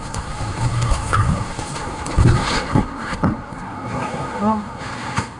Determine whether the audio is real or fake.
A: fake